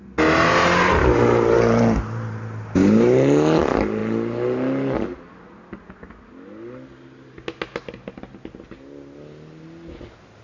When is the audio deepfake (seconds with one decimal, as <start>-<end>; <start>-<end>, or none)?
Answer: none